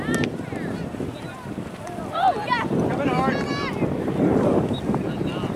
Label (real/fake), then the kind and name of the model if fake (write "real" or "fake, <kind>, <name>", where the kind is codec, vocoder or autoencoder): fake, vocoder, BigVGAN v2